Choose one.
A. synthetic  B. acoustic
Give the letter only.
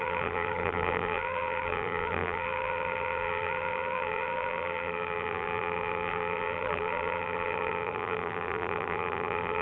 A